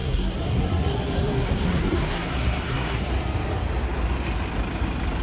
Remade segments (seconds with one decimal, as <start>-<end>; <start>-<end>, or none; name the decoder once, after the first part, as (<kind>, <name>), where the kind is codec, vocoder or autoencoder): 0.0-3.1 (codec, SNAC)